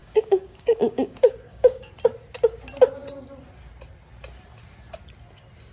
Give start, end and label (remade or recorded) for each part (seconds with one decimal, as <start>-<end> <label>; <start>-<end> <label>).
0.0-1.9 remade; 1.9-5.7 recorded